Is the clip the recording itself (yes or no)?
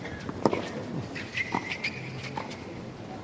yes